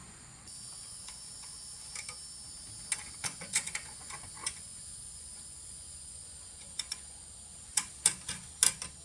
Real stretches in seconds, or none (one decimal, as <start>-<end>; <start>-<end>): 1.9-3.2; 8.0-9.0